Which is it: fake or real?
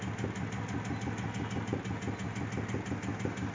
real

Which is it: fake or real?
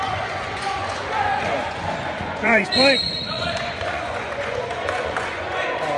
fake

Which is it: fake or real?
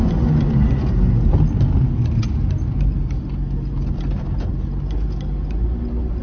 real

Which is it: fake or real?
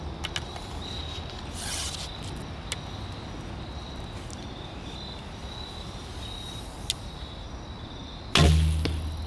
real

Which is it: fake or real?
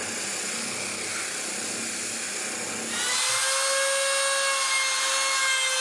real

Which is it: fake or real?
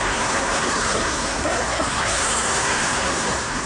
fake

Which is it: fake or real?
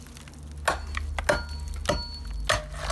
real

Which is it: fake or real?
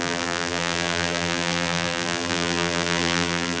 fake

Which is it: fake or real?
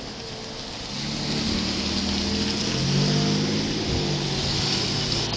real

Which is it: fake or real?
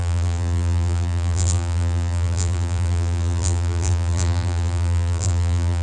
fake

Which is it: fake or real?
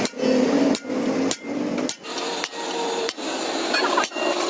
real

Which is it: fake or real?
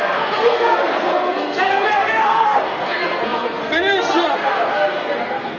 fake